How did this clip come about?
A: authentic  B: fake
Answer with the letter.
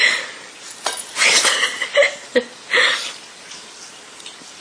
A